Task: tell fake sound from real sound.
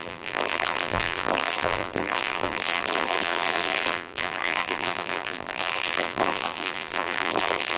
fake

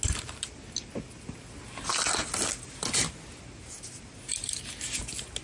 real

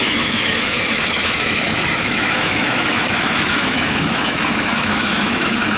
fake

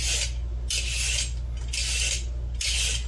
real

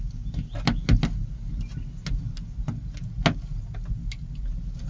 real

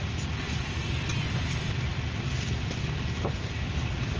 real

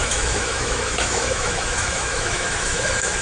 fake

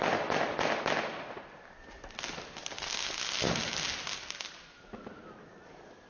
real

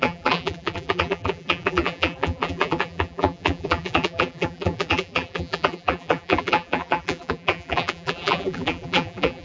fake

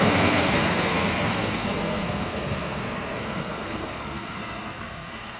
fake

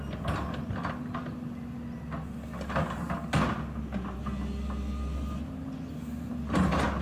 real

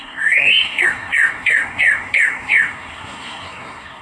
fake